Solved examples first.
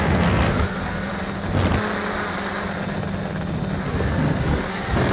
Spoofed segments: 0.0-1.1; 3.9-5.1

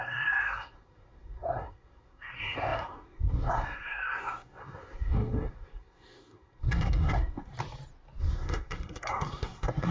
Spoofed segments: 0.0-7.5; 8.2-9.9

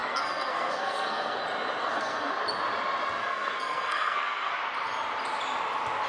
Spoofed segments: 0.0-1.4; 1.8-2.3; 3.2-4.5

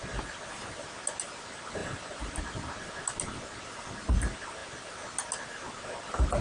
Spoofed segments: none

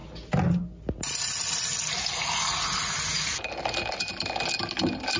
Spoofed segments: none